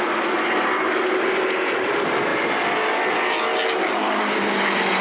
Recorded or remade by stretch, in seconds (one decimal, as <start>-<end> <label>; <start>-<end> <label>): 0.0-5.0 recorded